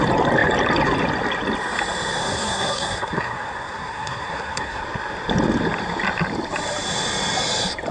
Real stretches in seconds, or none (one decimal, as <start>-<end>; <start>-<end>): 0.0-2.2; 4.8-7.9